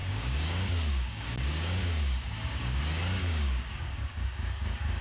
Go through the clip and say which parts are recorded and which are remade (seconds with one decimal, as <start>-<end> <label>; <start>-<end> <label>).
0.0-2.8 remade; 2.8-3.2 recorded; 3.2-5.0 remade

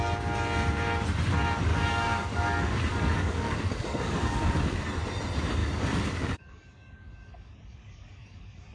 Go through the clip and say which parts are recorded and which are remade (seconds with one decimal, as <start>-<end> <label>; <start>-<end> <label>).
0.0-1.7 recorded; 1.7-4.8 remade; 4.8-5.6 recorded; 5.6-8.7 remade

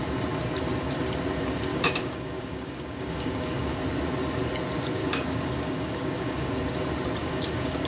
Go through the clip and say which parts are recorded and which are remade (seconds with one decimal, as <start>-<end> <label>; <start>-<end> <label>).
0.0-1.7 recorded; 1.7-3.8 remade; 3.8-5.0 recorded; 5.0-6.5 remade; 6.5-7.2 recorded; 7.2-7.9 remade

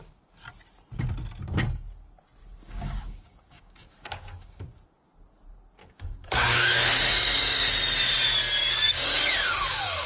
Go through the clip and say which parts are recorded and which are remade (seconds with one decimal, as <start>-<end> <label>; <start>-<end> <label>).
0.0-2.4 recorded; 2.4-4.6 remade; 4.6-5.8 recorded; 5.8-7.7 remade; 7.7-8.6 recorded; 8.6-10.1 remade

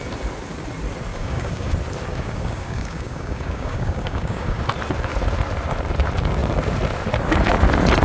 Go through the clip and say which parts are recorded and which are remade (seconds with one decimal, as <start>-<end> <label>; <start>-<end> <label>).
0.0-1.1 recorded; 1.1-1.7 remade; 1.7-2.1 recorded; 2.1-4.6 remade; 4.6-8.0 recorded

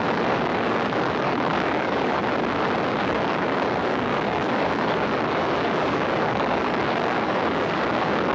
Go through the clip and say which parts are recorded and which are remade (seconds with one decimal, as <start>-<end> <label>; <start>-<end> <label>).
0.0-2.2 remade; 2.2-2.9 recorded; 2.9-8.3 remade

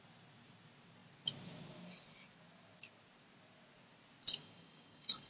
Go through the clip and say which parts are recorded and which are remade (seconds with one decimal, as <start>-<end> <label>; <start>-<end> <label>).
0.0-4.3 recorded; 4.3-5.3 remade

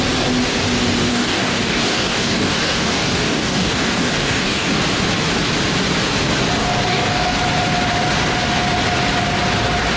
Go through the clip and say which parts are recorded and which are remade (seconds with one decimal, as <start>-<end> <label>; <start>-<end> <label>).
0.0-1.1 recorded; 1.1-4.8 remade; 4.8-6.6 recorded; 6.6-7.4 remade; 7.4-10.0 recorded